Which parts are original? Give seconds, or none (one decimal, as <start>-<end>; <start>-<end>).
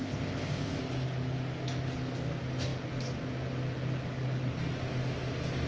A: 0.8-5.7